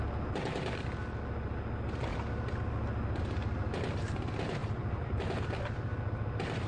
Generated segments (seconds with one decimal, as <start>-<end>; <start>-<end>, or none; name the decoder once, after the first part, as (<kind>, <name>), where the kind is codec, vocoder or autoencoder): 4.6-5.2 (vocoder, BigVGAN v2)